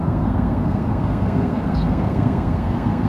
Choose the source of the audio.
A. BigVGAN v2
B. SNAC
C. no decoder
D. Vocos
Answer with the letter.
B